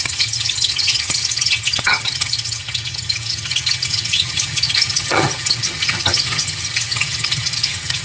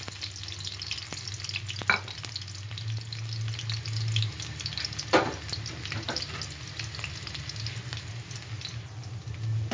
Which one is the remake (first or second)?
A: first